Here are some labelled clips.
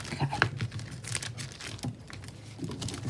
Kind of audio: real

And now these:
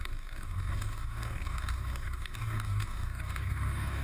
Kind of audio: fake